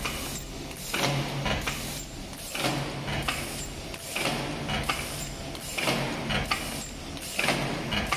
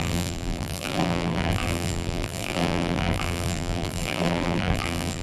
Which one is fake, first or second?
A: second